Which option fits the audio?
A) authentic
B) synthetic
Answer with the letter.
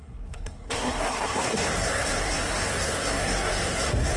B